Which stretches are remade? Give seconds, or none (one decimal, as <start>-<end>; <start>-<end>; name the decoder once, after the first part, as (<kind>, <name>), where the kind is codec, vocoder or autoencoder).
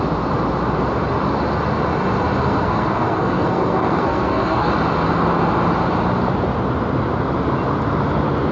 2.4-4.7 (codec, SNAC)